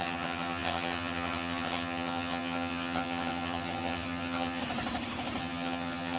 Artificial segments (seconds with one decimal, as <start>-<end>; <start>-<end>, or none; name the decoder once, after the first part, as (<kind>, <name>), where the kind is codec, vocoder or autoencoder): 0.0-4.6 (vocoder, HiFi-GAN); 5.4-6.2